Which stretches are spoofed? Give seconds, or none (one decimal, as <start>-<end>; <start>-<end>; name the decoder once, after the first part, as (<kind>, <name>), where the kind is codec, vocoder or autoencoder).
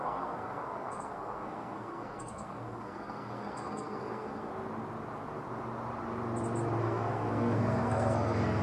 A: 0.0-4.5 (codec, SNAC); 6.8-8.6